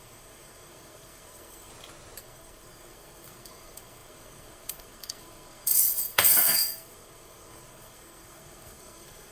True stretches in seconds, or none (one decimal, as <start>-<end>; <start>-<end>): 1.7-2.2